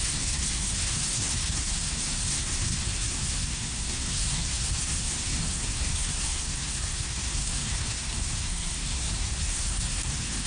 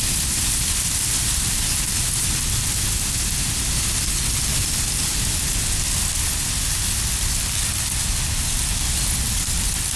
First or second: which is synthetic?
first